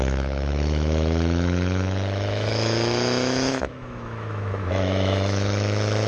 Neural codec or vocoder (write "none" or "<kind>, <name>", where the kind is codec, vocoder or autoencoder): autoencoder, DAC-VAE